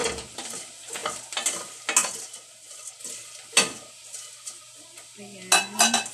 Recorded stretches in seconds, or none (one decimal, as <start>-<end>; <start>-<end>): 0.0-6.1